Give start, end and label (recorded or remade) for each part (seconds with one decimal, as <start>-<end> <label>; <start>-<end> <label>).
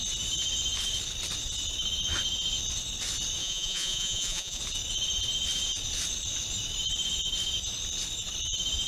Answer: 0.0-3.4 recorded; 3.4-4.6 remade; 4.6-8.9 recorded